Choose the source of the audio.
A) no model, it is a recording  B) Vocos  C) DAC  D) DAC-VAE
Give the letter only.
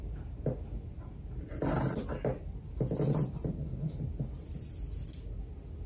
A